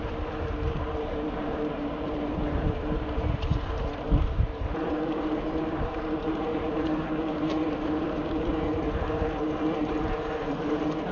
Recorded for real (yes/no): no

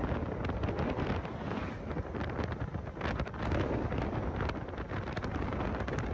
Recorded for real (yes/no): yes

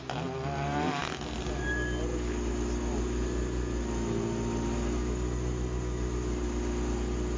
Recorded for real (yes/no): yes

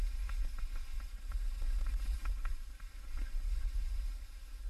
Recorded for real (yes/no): yes